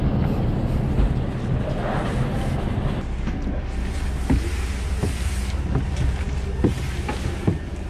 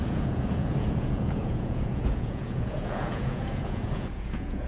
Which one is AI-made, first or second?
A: second